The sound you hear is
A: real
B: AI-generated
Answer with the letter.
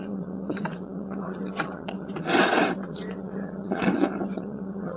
B